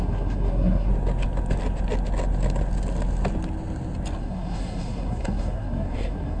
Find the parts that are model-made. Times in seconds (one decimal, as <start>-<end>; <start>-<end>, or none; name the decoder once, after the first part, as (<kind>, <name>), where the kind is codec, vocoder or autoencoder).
0.0-0.9 (codec, SNAC); 4.2-6.4